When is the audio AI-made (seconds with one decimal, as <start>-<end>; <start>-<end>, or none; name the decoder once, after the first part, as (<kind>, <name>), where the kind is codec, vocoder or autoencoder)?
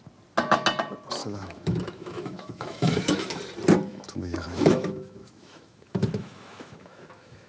1.2-3.4 (autoencoder, DAC-VAE); 3.9-7.5